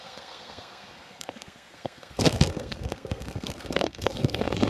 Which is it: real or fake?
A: fake